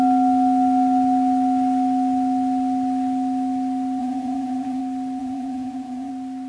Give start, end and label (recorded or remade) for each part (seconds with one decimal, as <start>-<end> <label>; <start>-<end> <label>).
0.0-4.0 recorded; 4.0-4.8 remade; 4.8-5.2 recorded; 5.2-6.1 remade; 6.1-6.5 recorded